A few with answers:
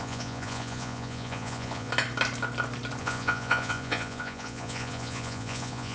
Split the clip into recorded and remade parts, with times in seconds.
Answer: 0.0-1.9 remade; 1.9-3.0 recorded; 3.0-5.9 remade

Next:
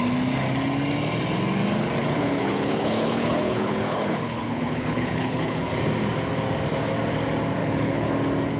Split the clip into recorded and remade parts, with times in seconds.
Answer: 0.0-2.0 recorded; 2.0-5.7 remade; 5.7-7.6 recorded; 7.6-8.1 remade; 8.1-8.6 recorded

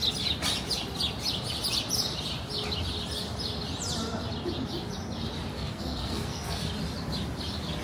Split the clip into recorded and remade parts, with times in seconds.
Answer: 0.0-5.5 recorded; 5.5-6.7 remade; 6.7-7.8 recorded

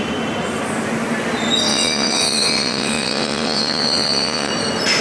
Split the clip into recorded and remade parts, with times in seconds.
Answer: 0.0-1.7 recorded; 1.7-4.5 remade; 4.5-5.0 recorded

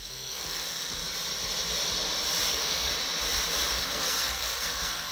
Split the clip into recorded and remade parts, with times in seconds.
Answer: 0.0-1.0 remade; 1.0-2.5 recorded; 2.5-2.9 remade; 2.9-3.7 recorded; 3.7-5.1 remade

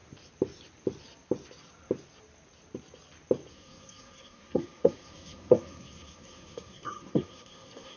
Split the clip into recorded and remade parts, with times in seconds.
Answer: 0.0-3.5 recorded; 3.5-8.0 remade

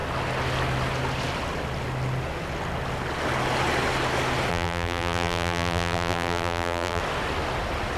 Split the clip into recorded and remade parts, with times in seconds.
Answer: 0.0-4.5 recorded; 4.5-7.0 remade; 7.0-8.0 recorded

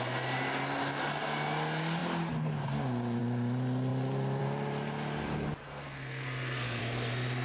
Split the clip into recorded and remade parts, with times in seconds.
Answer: 0.0-5.6 recorded; 5.6-6.8 remade; 6.8-7.4 recorded